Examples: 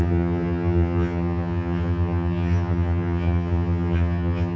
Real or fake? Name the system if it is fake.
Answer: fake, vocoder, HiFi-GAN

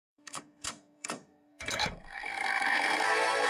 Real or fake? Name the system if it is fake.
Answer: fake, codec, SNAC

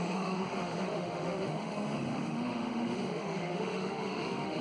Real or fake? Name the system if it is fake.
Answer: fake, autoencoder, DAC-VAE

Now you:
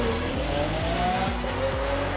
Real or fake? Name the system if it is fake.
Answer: real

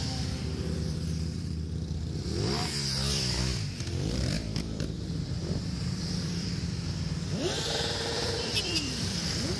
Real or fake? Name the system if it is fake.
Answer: fake, vocoder, BigVGAN v2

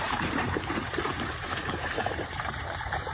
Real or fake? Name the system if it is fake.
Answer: fake, vocoder, BigVGAN v2